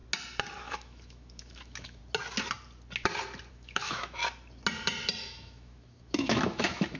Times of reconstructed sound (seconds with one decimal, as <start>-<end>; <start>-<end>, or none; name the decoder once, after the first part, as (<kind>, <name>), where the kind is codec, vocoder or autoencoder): 0.6-2.0 (autoencoder, DAC-VAE); 3.5-4.2; 5.2-7.0